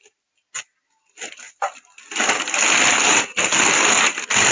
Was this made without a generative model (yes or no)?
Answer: yes